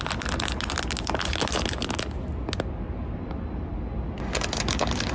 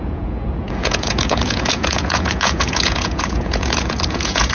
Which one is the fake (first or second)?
second